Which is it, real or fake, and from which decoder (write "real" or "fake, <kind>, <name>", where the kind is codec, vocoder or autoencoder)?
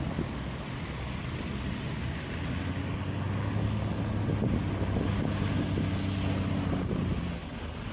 real